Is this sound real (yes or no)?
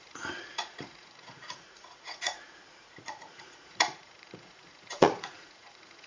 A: no